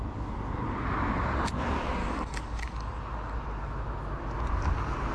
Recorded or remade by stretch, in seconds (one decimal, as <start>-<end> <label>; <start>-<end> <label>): 0.0-2.0 recorded; 2.0-3.0 remade; 3.0-5.1 recorded